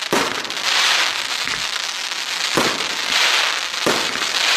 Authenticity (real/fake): real